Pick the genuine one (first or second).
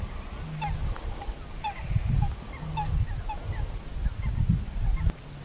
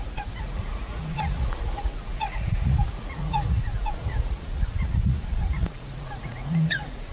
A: first